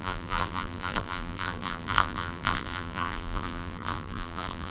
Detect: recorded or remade remade